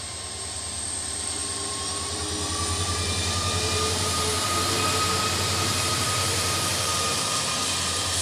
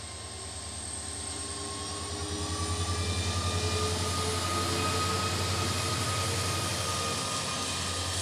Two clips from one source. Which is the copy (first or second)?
first